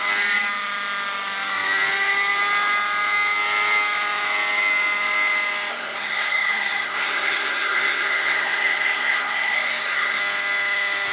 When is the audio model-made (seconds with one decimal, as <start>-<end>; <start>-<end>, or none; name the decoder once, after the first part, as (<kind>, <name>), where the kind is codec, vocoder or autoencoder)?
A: 5.7-10.2 (codec, SNAC)